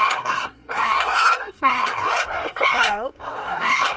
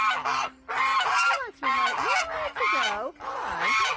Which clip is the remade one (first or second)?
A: first